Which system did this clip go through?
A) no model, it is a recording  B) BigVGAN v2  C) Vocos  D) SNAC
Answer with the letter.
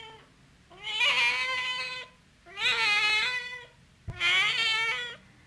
A